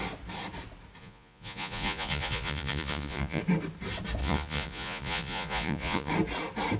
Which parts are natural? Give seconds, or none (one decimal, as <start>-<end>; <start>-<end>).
0.0-1.0; 3.4-4.2; 6.1-6.8